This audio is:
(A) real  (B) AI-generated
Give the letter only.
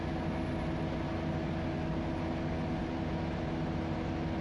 A